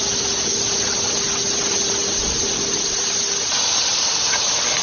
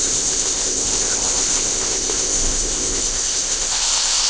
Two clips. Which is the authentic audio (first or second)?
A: first